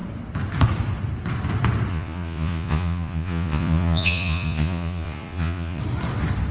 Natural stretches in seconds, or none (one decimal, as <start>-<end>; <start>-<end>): 0.0-1.9; 5.8-6.5